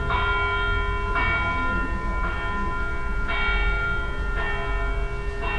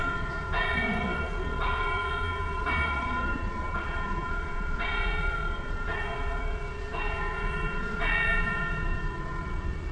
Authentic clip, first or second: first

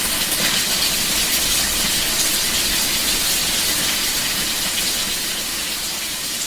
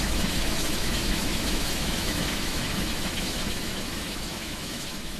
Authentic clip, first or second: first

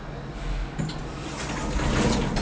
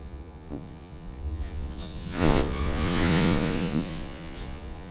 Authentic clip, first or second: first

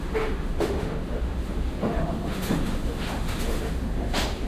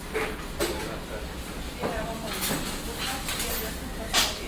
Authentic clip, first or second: second